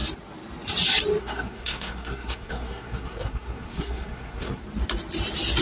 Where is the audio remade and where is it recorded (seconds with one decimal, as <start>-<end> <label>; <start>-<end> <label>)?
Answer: 0.0-1.2 recorded; 1.2-4.6 remade; 4.6-5.6 recorded